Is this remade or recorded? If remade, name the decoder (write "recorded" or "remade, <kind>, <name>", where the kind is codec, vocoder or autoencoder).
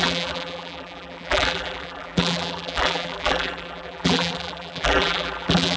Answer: remade, vocoder, BigVGAN v2